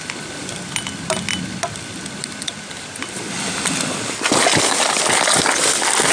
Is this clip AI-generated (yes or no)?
no